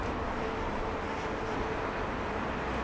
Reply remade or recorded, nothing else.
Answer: recorded